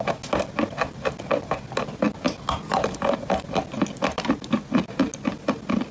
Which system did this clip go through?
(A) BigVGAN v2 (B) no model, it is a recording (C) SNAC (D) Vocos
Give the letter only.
B